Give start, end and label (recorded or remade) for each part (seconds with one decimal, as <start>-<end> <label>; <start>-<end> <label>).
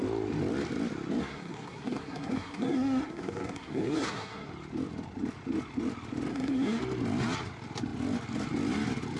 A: 0.0-1.2 recorded; 1.2-4.5 remade; 4.5-6.3 recorded; 6.3-6.8 remade; 6.8-9.2 recorded